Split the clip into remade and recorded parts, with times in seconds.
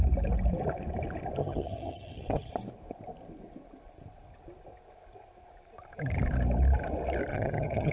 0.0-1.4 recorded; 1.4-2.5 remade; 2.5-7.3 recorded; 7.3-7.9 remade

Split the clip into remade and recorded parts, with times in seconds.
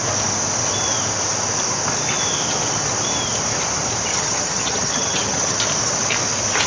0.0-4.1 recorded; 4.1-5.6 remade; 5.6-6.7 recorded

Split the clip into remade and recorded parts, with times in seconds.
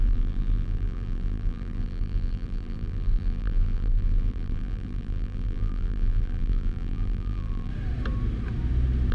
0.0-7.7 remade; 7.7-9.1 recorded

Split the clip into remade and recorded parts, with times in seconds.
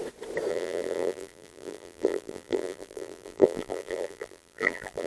0.0-0.5 recorded; 0.5-5.1 remade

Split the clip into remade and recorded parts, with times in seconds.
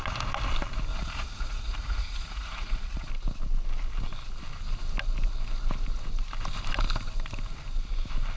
0.0-0.9 recorded; 0.9-3.1 remade; 3.1-8.4 recorded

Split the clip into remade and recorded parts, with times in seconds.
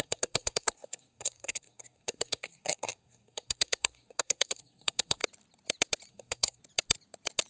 0.0-5.2 remade; 5.2-6.1 recorded; 6.1-6.6 remade; 6.6-7.5 recorded